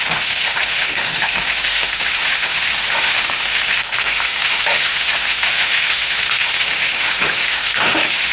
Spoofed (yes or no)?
yes